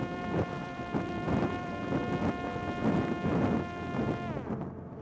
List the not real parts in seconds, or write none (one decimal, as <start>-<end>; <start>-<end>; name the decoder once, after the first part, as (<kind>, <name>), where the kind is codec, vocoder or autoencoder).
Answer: 0.0-1.8 (vocoder, BigVGAN v2)